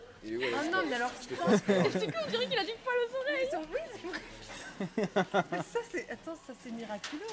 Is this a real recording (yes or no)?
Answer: yes